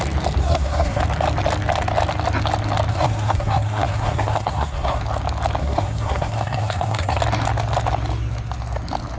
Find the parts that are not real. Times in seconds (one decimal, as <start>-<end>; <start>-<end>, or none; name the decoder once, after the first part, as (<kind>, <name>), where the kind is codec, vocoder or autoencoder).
0.4-1.0 (codec, SNAC); 2.9-5.0; 5.6-7.2